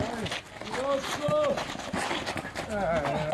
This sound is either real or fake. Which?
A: real